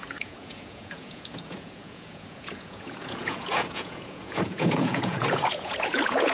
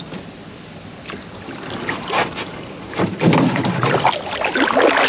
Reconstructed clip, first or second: first